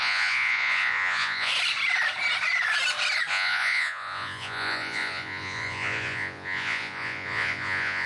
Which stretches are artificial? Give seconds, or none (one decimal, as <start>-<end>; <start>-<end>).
0.0-1.5; 3.3-8.1